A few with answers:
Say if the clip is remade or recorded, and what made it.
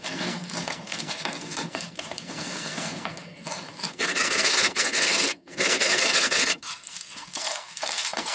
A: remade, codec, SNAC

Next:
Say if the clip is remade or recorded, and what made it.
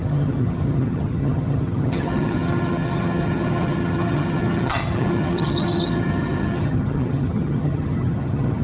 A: remade, vocoder, HiFi-GAN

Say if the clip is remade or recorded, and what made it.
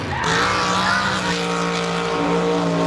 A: recorded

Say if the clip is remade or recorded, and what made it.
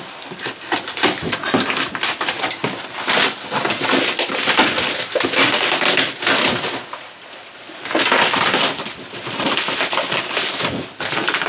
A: recorded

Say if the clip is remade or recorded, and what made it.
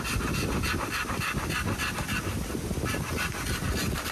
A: recorded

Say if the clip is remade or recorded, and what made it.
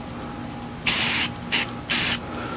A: recorded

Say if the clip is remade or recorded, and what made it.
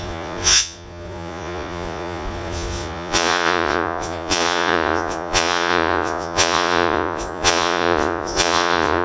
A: remade, vocoder, Vocos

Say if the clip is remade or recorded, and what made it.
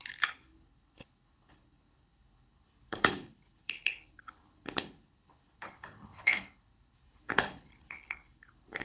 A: remade, codec, HILCodec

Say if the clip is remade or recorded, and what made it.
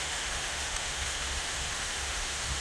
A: remade, autoencoder, DAC-VAE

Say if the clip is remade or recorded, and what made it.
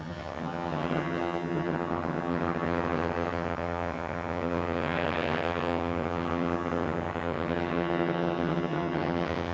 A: remade, vocoder, HiFi-GAN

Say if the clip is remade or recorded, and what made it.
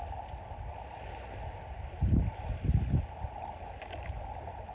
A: recorded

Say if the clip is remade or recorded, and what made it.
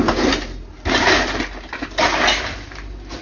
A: recorded